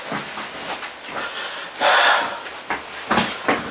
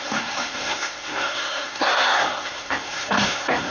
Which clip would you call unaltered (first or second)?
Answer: first